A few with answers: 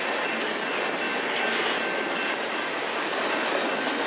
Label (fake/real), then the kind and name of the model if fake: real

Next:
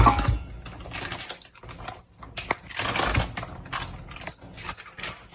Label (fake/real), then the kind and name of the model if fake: real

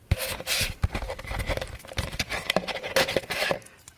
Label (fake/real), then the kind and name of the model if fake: real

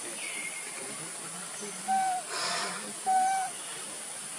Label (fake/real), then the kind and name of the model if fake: real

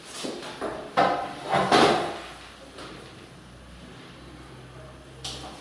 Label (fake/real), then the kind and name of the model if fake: real